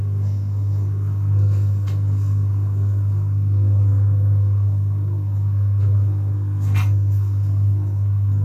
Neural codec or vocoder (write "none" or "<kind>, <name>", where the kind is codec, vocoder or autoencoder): codec, SNAC